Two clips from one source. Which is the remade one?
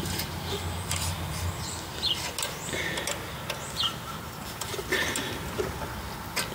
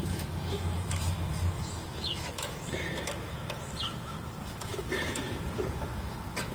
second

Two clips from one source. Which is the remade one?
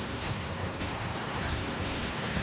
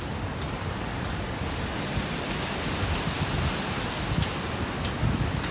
first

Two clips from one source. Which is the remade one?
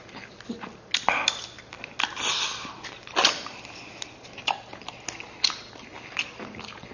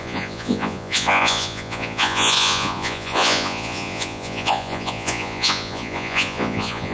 second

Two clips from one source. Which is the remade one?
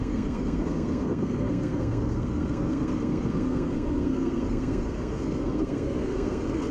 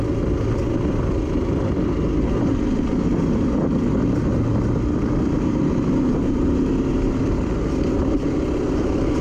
first